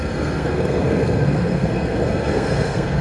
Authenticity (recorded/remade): remade